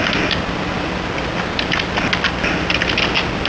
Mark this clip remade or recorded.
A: recorded